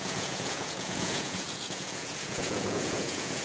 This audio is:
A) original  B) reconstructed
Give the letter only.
B